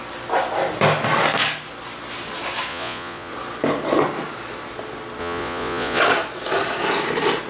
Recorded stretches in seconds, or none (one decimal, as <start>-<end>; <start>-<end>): 0.0-2.7; 3.3-5.2; 6.0-7.5